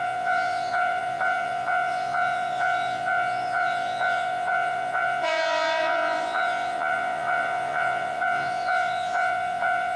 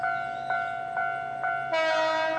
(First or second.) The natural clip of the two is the second